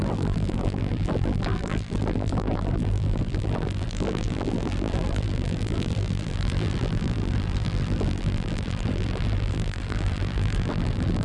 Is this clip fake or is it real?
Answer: fake